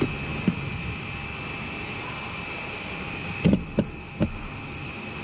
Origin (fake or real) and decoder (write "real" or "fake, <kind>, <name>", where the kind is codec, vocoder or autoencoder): real